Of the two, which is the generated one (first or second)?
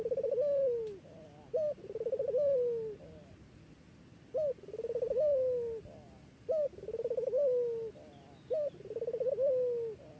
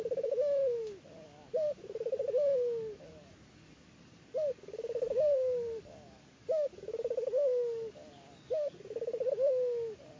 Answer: second